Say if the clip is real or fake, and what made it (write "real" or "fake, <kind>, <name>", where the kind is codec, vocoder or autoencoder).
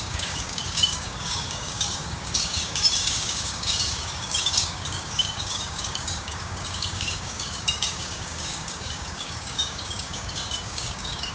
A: fake, codec, DAC